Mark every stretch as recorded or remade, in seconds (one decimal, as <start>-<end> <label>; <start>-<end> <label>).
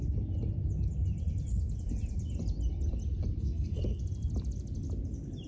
0.0-3.4 recorded; 3.4-4.0 remade; 4.0-5.5 recorded